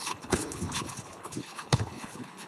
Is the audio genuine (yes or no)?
no